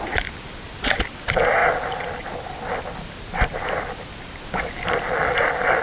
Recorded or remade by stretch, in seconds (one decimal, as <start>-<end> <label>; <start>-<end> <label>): 0.0-5.8 recorded